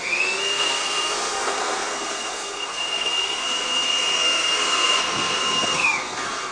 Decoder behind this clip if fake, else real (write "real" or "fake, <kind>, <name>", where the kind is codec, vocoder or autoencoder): fake, codec, SNAC